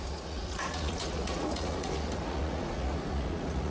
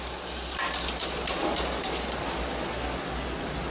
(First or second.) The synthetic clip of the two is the first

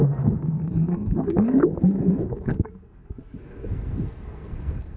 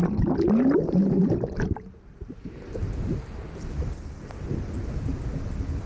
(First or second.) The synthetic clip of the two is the first